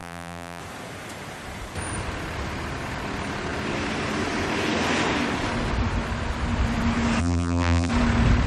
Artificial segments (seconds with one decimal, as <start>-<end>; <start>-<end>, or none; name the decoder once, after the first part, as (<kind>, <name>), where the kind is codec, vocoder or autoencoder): 0.0-0.6 (vocoder, BigVGAN v2); 7.2-7.9

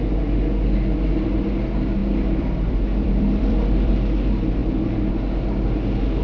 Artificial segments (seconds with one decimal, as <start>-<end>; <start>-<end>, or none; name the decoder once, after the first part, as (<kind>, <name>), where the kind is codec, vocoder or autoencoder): 2.0-3.9 (vocoder, BigVGAN v2)

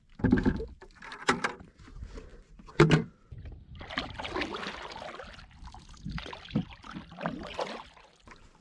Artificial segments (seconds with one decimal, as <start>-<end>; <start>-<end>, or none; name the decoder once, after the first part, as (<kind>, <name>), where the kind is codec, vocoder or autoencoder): 1.2-1.8 (vocoder, BigVGAN v2)

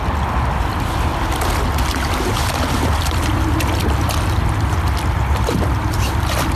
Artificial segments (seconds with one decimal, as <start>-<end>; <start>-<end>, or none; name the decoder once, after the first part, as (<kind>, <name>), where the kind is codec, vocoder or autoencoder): none

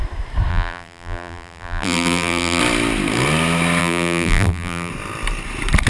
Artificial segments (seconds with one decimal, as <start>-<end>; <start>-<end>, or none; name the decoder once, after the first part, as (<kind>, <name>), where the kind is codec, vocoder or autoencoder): 0.5-2.6 (vocoder, BigVGAN v2); 3.8-4.9